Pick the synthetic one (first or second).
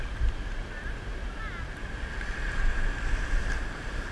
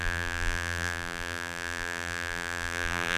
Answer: second